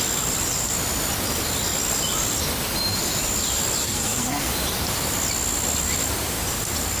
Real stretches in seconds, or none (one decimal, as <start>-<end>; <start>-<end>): 0.0-3.8; 4.5-7.0